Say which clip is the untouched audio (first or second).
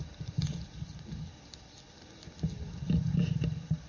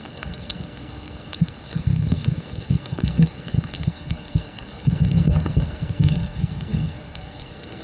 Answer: first